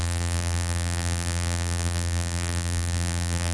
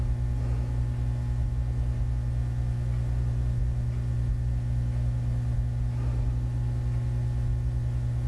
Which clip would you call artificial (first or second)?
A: first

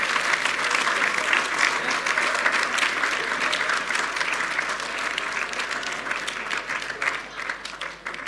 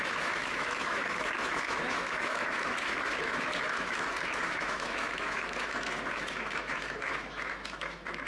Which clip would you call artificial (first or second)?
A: second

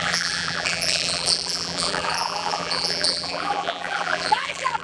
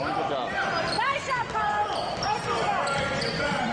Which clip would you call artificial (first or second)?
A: first